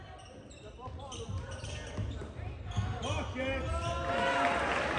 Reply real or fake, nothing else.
real